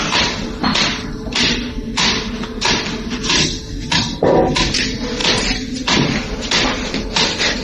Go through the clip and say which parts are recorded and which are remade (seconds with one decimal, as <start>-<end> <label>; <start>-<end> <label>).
0.0-5.2 recorded; 5.2-6.5 remade; 6.5-7.6 recorded